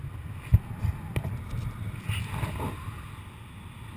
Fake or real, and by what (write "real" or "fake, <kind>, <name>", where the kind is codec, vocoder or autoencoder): real